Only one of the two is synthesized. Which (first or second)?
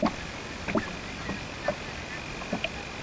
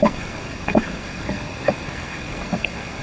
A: second